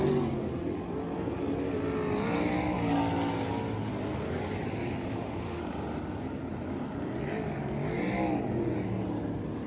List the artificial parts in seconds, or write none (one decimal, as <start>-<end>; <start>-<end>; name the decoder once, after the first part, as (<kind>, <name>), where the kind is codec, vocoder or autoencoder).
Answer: 5.0-5.6 (autoencoder, DAC-VAE)